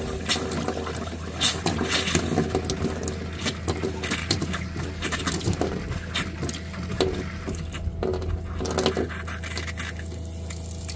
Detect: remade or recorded recorded